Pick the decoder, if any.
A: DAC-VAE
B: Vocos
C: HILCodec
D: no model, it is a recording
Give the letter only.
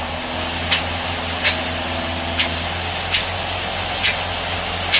D